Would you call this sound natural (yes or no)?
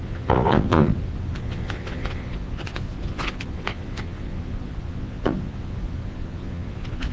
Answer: no